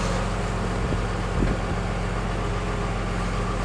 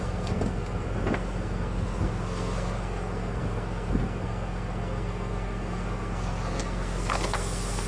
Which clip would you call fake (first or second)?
second